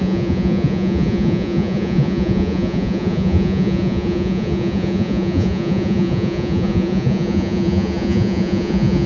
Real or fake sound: fake